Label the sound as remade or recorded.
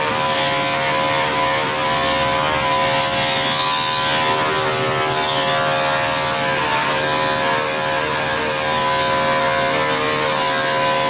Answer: recorded